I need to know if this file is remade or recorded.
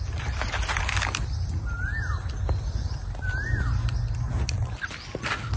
recorded